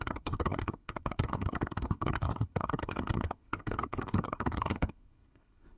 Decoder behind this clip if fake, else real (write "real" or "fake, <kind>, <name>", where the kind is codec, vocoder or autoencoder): fake, codec, SNAC